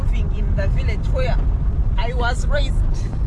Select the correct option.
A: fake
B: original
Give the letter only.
B